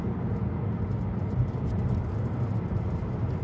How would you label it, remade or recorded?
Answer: recorded